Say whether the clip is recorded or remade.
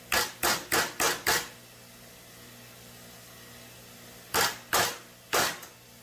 recorded